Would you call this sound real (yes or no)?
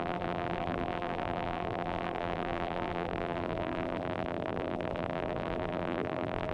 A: no